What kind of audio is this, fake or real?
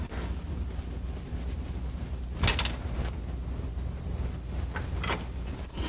real